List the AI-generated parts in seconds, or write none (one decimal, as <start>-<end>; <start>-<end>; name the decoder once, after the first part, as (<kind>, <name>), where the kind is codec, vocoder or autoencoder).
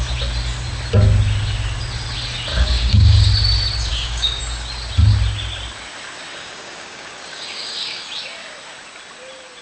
2.5-3.3 (codec, DAC); 3.9-4.4; 6.3-8.0